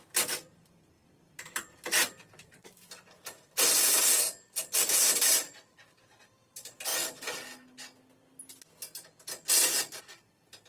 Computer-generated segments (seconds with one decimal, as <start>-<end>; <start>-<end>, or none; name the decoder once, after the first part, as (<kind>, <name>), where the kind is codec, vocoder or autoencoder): 0.0-6.9 (vocoder, BigVGAN v2); 10.0-10.7